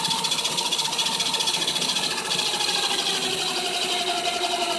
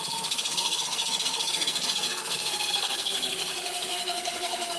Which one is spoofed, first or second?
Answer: second